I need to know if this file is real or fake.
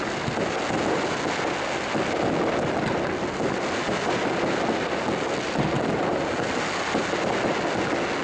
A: real